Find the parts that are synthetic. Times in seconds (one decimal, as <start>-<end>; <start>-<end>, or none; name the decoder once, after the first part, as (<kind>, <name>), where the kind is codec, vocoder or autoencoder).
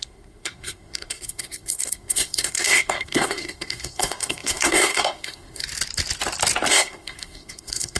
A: 0.0-5.6 (codec, SNAC); 6.7-8.0